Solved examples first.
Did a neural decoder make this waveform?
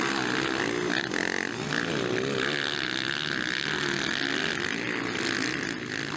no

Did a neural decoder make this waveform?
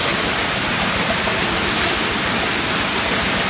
no